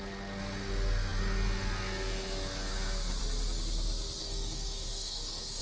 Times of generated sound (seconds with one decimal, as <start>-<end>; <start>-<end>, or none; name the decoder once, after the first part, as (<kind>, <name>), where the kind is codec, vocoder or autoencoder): 4.2-5.6 (codec, DAC)